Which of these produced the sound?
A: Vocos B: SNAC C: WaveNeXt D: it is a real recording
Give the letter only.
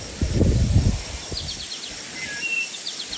D